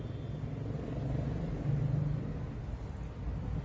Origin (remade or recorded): recorded